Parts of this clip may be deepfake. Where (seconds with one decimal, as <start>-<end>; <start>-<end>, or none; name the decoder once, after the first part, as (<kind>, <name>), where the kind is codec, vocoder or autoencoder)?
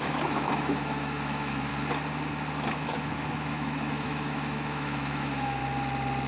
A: 0.0-1.7 (autoencoder, DAC-VAE); 2.7-5.6